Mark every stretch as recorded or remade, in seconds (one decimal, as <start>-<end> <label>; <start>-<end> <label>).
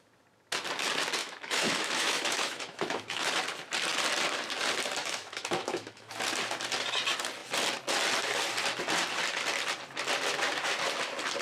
0.0-1.2 recorded; 1.2-3.3 remade; 3.3-5.0 recorded; 5.0-6.1 remade; 6.1-11.4 recorded